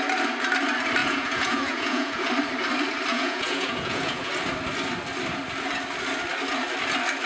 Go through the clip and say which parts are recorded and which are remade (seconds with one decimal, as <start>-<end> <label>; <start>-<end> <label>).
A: 0.0-1.0 recorded; 1.0-2.3 remade; 2.3-3.1 recorded; 3.1-4.3 remade; 4.3-7.3 recorded